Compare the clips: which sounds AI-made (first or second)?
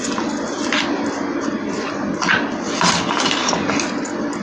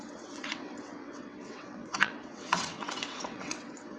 second